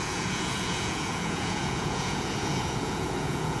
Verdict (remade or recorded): remade